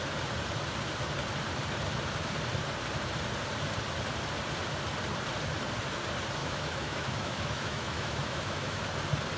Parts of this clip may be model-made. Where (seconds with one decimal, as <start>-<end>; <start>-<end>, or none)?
6.4-8.8